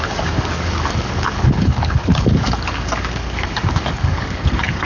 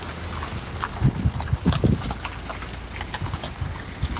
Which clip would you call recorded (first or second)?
second